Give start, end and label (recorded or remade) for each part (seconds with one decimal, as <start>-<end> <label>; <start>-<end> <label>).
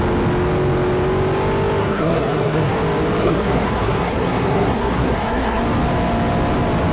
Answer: 0.0-1.8 recorded; 1.8-2.7 remade; 2.7-3.2 recorded; 3.2-5.6 remade; 5.6-6.9 recorded